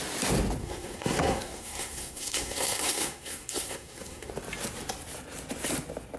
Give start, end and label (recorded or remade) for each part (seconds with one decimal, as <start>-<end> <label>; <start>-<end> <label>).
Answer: 0.0-0.6 recorded; 0.6-4.3 remade; 4.3-6.2 recorded